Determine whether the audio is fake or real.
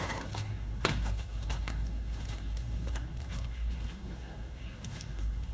fake